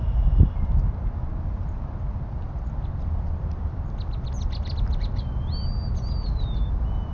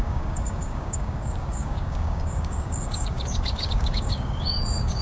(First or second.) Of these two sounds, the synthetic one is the second